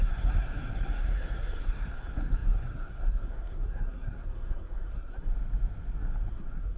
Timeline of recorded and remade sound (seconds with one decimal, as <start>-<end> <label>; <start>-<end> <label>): 0.0-5.3 remade; 5.3-6.3 recorded; 6.3-6.8 remade